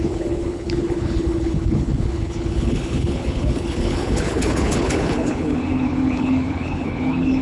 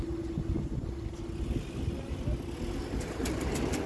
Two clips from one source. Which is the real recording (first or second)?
second